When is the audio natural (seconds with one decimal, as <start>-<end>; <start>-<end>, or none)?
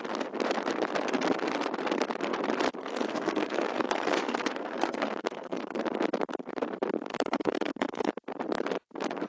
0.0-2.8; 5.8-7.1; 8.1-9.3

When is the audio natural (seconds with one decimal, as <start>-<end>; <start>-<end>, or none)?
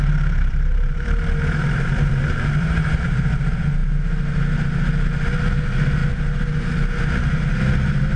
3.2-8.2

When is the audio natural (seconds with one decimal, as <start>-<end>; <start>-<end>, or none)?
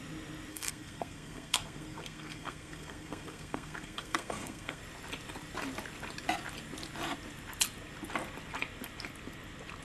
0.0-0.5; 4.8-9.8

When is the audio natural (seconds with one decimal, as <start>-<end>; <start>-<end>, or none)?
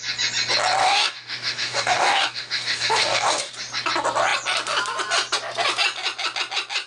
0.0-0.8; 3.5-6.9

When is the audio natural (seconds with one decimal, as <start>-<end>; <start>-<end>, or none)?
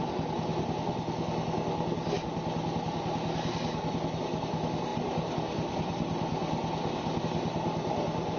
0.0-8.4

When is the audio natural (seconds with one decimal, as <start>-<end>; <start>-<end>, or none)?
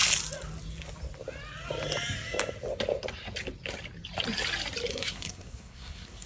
0.0-4.9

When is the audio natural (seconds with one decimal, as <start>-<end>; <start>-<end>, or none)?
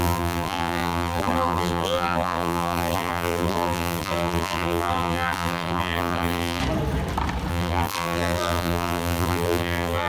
6.6-7.5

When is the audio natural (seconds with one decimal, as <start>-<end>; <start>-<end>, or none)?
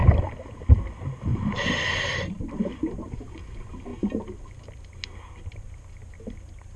0.0-1.3; 3.2-6.8